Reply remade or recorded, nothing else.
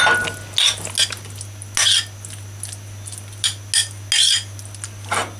recorded